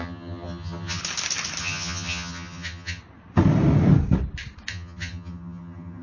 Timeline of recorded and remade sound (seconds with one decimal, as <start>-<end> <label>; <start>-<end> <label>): 0.0-1.0 remade; 1.0-1.6 recorded; 1.6-3.0 remade; 3.0-4.7 recorded; 4.7-6.0 remade